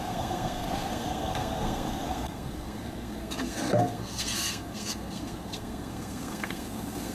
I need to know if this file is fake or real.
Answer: fake